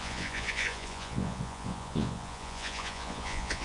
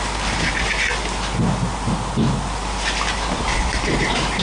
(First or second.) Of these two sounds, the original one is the second